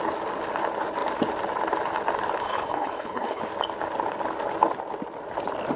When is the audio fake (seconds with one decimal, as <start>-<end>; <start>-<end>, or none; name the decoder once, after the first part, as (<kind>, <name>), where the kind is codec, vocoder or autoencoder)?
2.4-3.4 (codec, HILCodec)